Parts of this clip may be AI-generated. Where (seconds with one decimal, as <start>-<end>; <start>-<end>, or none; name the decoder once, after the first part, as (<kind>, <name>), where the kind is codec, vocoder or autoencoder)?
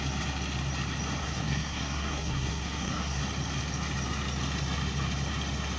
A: 1.2-3.2 (codec, SNAC)